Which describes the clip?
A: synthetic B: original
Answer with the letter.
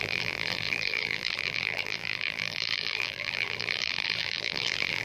A